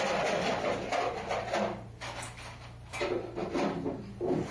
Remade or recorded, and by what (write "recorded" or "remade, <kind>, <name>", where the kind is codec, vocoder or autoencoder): recorded